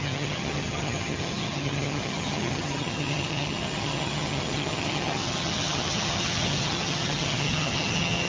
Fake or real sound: fake